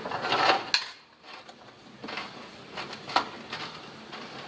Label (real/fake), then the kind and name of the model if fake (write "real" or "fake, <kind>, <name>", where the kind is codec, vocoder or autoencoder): real